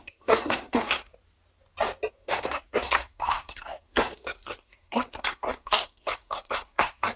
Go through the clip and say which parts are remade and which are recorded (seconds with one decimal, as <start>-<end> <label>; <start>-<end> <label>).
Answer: 0.0-1.1 remade; 1.1-2.1 recorded; 2.1-7.2 remade